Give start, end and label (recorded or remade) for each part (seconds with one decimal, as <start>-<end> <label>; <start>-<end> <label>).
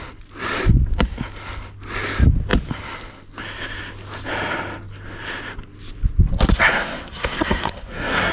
0.0-6.5 recorded; 6.5-8.3 remade